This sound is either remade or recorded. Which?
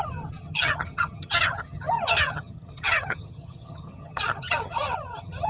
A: remade